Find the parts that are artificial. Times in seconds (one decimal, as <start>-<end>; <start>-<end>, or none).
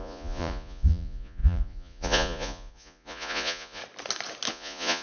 0.0-3.8; 4.5-5.0